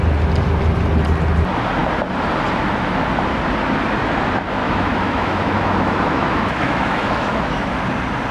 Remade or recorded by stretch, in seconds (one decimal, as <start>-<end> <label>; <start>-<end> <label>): 0.0-4.6 recorded; 4.6-7.8 remade; 7.8-8.3 recorded